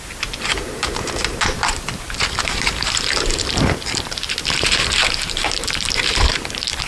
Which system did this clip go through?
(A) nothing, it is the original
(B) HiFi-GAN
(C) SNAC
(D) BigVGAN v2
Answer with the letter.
D